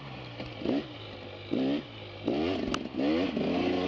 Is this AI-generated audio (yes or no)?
no